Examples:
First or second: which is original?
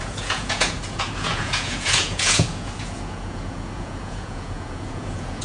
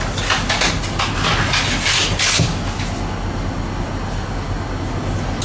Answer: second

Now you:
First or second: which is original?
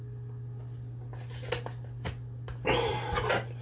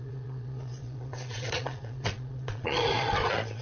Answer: first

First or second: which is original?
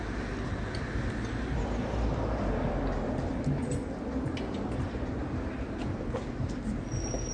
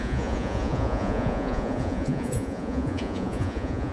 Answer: first